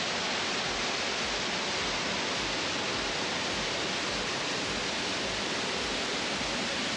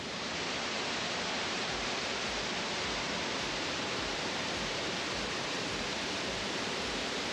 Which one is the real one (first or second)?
first